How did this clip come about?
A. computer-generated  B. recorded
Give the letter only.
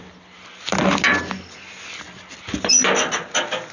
B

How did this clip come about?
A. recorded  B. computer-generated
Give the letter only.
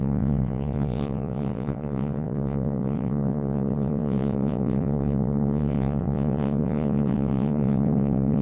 B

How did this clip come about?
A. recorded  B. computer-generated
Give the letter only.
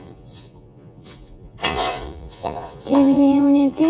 B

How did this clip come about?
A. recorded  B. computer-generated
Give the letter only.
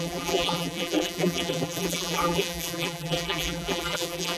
B